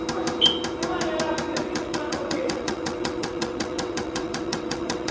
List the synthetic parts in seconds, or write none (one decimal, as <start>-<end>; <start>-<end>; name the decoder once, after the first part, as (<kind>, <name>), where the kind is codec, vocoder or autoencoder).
1.6-5.1 (vocoder, WaveNeXt)